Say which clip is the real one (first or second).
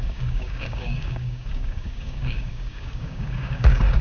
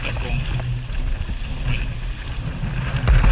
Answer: second